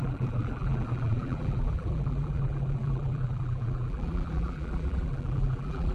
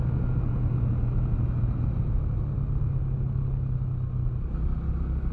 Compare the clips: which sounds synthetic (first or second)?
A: first